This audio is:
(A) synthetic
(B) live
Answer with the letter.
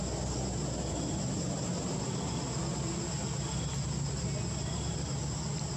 B